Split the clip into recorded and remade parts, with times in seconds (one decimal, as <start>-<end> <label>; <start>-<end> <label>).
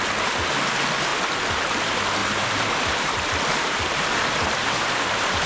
0.0-2.2 recorded; 2.2-2.7 remade; 2.7-3.5 recorded; 3.5-5.5 remade